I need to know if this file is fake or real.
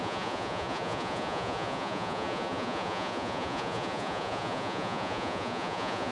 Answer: fake